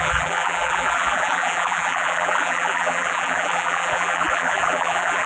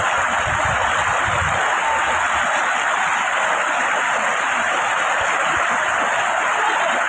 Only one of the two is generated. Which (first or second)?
first